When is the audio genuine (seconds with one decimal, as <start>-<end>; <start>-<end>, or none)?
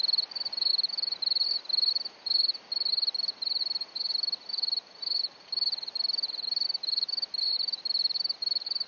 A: 0.0-8.9